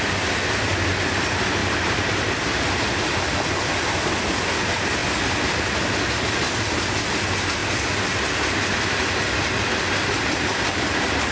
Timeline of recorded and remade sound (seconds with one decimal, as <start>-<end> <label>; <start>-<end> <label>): 0.0-1.6 recorded; 1.6-3.2 remade; 3.2-11.3 recorded